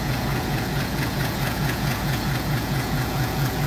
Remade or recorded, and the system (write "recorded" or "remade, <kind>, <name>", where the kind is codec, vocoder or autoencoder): remade, vocoder, Vocos